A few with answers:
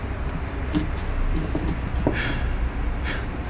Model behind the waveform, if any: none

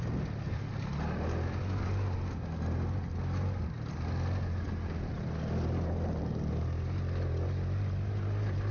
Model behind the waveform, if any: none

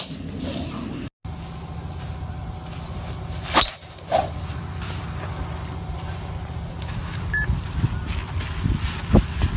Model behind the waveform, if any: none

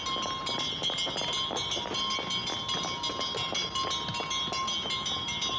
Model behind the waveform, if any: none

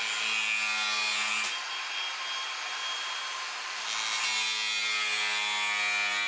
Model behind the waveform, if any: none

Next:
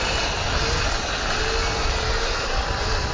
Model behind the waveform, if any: none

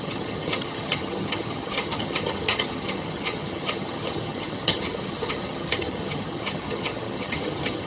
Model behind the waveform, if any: vocoder, HiFi-GAN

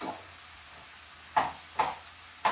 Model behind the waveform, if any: none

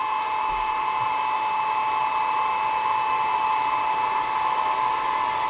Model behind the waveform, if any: none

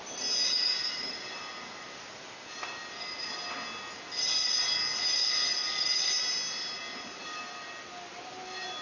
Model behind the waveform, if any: none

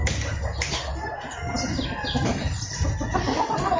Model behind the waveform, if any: none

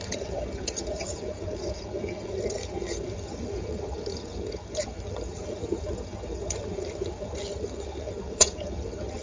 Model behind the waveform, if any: vocoder, HiFi-GAN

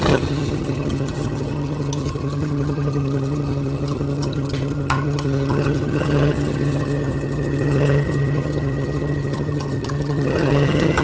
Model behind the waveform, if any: vocoder, HiFi-GAN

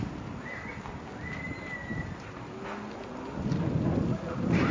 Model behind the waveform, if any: none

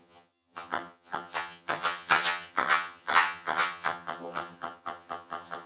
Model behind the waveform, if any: vocoder, HiFi-GAN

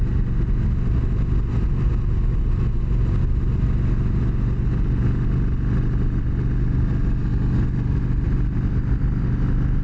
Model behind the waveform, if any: none